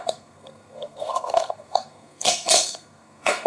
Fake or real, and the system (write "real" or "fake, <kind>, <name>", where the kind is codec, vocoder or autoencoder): fake, codec, SNAC